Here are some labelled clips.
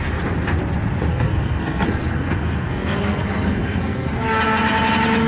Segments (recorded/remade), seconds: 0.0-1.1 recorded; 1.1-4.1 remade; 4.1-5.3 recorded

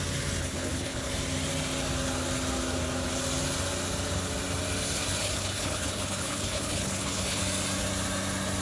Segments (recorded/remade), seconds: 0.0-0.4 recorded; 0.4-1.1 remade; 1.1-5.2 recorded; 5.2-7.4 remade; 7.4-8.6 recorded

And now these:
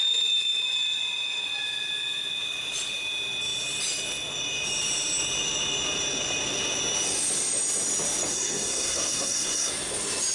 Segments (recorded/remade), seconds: 0.0-8.3 recorded; 8.3-9.7 remade; 9.7-10.3 recorded

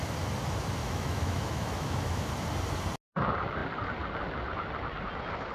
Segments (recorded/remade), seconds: 0.0-0.8 recorded; 0.8-2.3 remade; 2.3-5.5 recorded

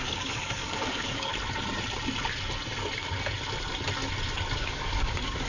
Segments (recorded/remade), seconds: 0.0-1.3 remade; 1.3-4.6 recorded; 4.6-5.5 remade

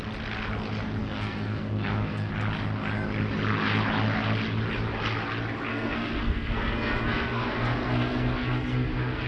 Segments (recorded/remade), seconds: 0.0-1.0 recorded; 1.0-2.3 remade; 2.3-5.7 recorded; 5.7-9.3 remade

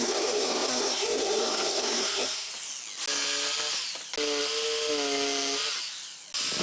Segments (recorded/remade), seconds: 0.0-2.5 remade; 2.5-6.6 recorded

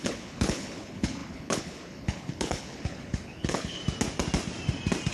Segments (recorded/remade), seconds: 0.0-3.8 remade; 3.8-5.1 recorded